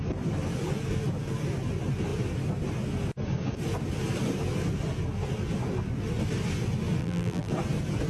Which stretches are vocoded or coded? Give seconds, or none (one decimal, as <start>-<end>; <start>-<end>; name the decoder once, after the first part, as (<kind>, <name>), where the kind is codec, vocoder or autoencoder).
7.0-7.5 (vocoder, BigVGAN v2)